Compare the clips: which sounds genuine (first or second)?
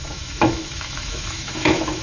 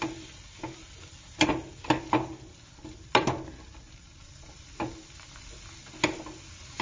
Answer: second